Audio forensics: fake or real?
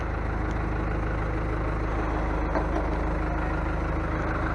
real